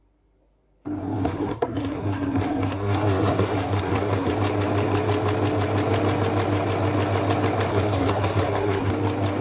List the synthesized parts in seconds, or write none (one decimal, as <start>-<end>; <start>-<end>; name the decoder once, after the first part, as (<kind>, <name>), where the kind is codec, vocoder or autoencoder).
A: 1.0-4.3 (codec, SNAC); 7.7-8.9